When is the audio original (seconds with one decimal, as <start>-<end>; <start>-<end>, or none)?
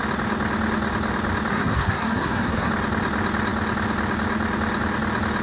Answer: 0.0-1.5; 2.7-5.4